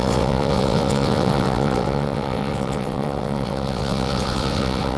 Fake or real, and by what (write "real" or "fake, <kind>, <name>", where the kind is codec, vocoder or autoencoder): fake, vocoder, WaveNeXt